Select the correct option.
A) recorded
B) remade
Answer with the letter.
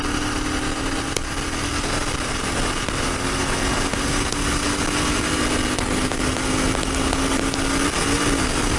A